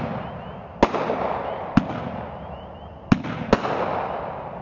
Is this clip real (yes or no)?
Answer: yes